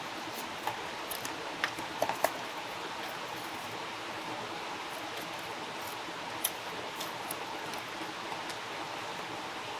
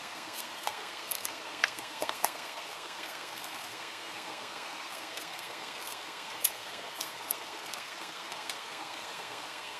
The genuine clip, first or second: first